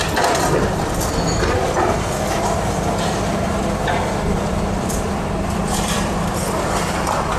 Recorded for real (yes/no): no